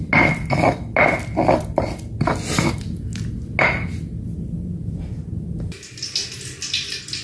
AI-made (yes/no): no